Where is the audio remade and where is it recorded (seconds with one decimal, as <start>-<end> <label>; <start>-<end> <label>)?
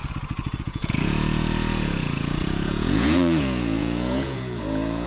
0.0-0.6 recorded; 0.6-5.1 remade